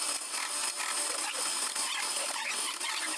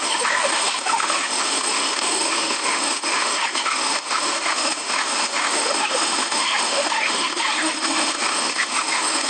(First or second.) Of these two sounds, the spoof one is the second